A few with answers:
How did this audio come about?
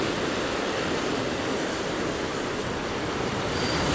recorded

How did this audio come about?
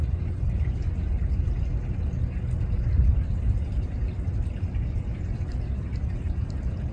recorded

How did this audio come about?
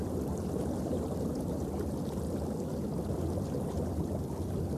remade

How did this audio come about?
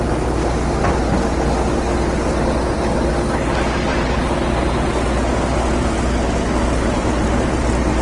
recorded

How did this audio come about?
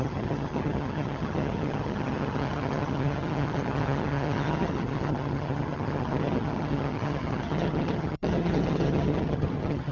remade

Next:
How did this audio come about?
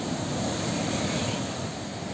recorded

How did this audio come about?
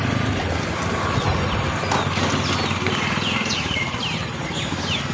recorded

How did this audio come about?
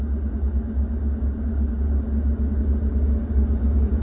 recorded